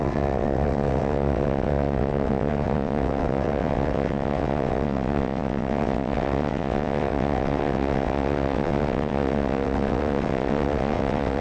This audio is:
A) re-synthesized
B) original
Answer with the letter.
A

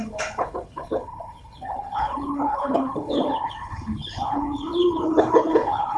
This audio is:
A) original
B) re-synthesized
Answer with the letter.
B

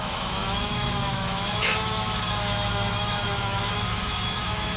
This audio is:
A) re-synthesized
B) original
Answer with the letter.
A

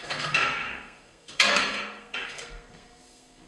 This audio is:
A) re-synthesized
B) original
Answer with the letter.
A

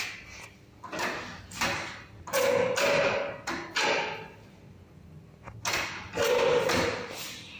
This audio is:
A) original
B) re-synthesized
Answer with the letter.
A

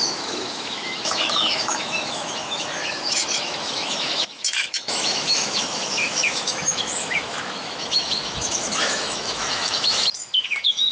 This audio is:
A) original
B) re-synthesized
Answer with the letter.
B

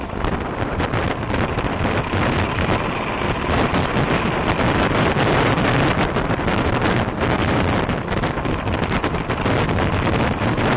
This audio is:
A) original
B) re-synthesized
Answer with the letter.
B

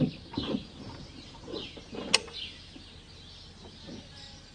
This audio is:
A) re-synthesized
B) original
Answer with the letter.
B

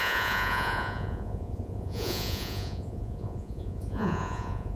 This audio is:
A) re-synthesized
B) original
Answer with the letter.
A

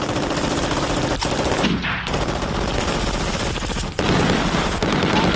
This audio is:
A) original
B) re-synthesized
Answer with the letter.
A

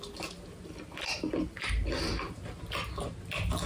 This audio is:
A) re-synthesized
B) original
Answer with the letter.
B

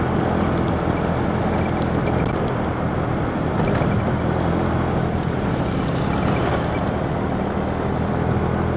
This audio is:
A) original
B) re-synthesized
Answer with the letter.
A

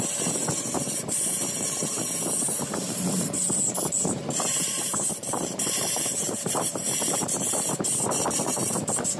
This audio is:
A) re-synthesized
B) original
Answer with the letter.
A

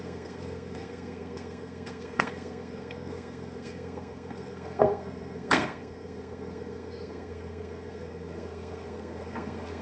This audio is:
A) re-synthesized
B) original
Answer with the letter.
A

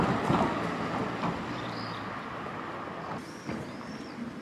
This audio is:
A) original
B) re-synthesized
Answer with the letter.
A